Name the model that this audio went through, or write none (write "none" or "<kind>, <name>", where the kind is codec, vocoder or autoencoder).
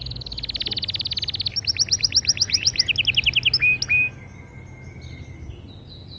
none